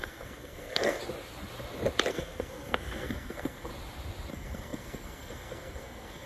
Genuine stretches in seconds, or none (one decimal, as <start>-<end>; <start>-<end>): 1.0-2.1; 3.7-4.3